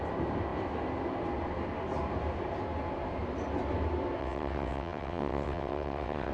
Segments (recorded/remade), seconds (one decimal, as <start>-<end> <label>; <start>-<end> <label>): 0.0-4.2 recorded; 4.2-6.3 remade